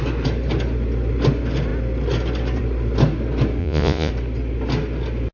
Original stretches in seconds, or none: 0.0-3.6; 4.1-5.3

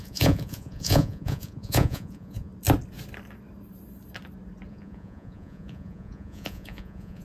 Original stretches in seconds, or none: 2.5-4.7

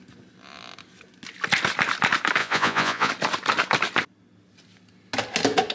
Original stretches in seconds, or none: 0.0-2.4; 3.1-5.7

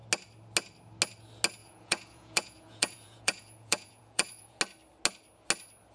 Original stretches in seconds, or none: 0.0-1.6; 4.6-5.9

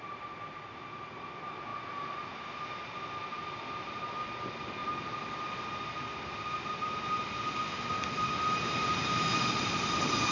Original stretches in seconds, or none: 0.0-10.3